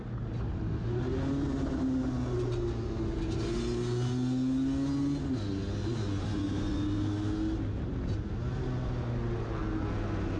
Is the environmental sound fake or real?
real